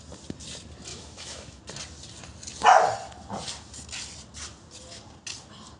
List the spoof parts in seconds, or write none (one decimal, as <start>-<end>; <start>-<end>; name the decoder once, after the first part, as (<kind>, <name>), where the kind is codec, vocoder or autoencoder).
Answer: 0.9-1.6 (autoencoder, DAC-VAE)